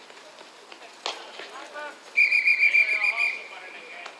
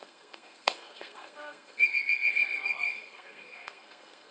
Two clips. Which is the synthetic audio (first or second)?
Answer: second